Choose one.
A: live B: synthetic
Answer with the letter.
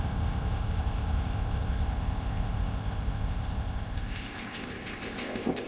B